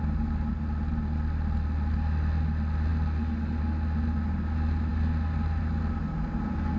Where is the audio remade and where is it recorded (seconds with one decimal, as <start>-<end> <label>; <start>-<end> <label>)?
0.0-6.8 recorded